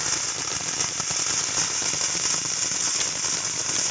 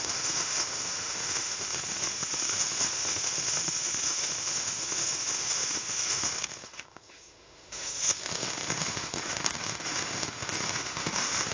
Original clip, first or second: first